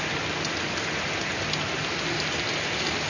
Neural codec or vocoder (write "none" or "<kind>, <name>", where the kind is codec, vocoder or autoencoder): none